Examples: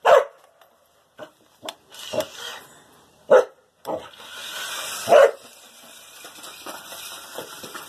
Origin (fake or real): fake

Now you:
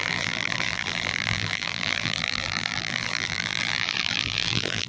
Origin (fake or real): fake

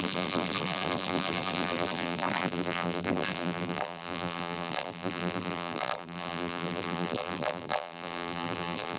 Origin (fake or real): fake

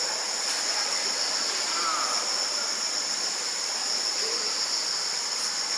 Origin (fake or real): real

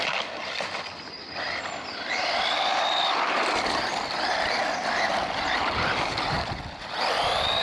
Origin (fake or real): fake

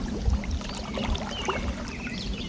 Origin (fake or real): real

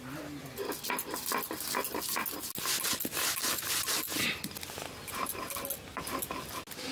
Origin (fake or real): real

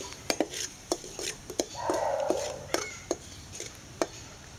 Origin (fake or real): fake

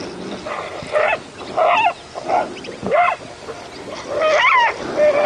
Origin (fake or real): real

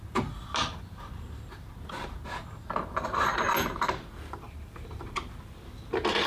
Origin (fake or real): fake